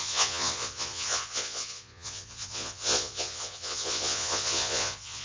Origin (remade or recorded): remade